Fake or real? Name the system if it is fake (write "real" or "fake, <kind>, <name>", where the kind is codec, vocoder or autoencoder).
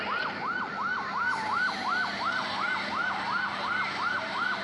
real